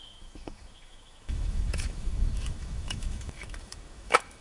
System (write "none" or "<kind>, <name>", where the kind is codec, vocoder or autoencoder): autoencoder, DAC-VAE